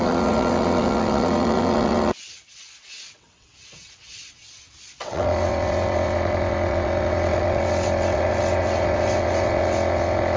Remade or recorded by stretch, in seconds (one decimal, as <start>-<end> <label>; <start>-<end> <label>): 0.0-10.4 remade